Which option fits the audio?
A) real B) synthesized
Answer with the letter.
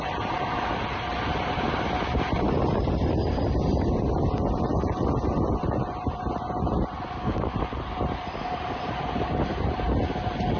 A